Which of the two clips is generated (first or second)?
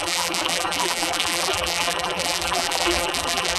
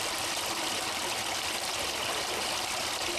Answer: first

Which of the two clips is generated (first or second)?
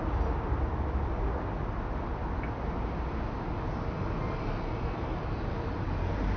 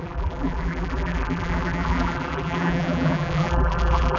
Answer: second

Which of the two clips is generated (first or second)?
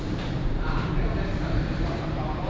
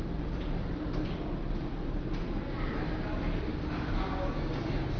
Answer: first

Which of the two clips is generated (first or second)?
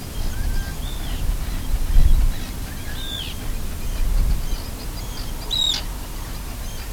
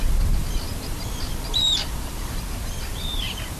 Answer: second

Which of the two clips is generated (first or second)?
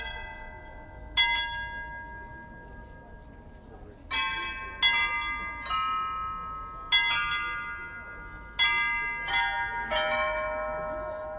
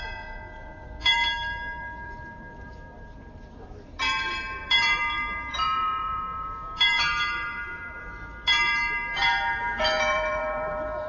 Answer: second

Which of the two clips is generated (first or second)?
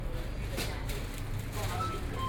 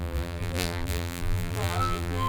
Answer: second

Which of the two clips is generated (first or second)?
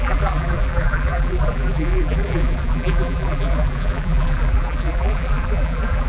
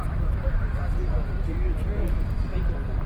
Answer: first